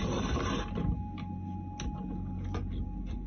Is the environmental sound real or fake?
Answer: real